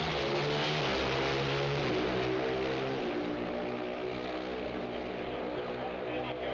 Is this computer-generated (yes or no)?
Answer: no